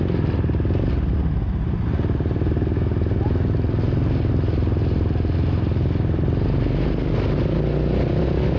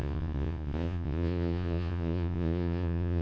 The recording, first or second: first